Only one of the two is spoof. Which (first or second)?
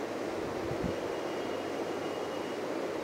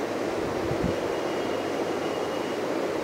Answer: second